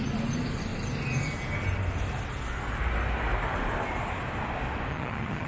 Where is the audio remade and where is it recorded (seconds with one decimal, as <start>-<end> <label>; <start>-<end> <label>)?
0.0-4.9 recorded; 4.9-5.5 remade